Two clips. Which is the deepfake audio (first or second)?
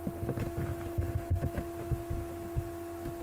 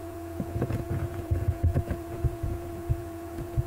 second